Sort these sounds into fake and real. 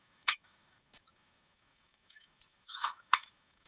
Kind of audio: fake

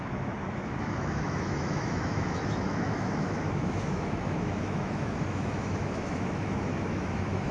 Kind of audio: fake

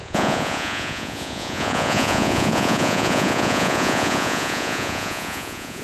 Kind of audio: fake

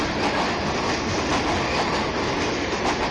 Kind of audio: real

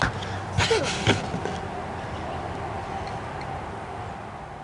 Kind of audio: real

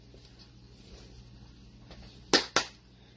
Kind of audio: real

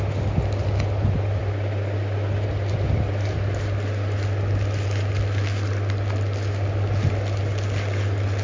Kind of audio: real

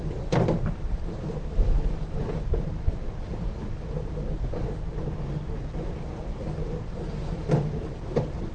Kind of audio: real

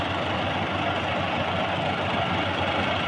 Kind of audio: real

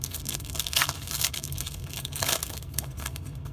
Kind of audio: fake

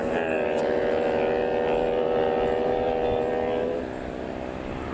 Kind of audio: real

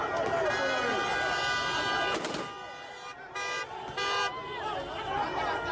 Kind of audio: real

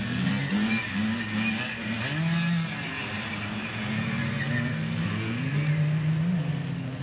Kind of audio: real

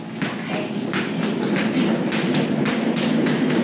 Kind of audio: real